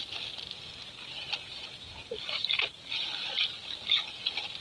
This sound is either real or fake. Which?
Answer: real